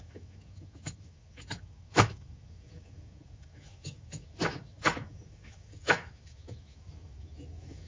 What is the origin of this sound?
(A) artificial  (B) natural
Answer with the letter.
A